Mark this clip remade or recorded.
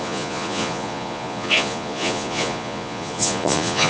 remade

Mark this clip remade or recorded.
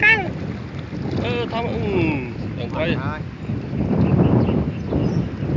recorded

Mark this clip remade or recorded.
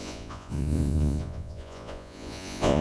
remade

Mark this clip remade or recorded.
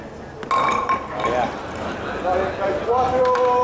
recorded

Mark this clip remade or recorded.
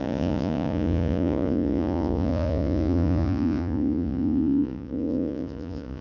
remade